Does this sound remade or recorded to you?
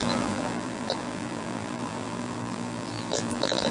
remade